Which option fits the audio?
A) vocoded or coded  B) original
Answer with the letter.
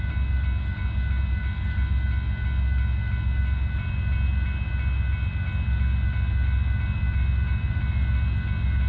B